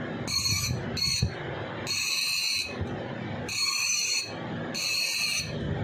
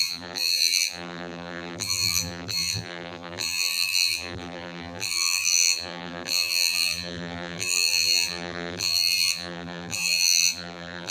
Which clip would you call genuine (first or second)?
first